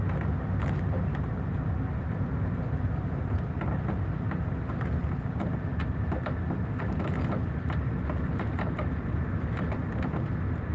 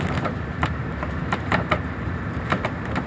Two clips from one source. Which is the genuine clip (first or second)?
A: first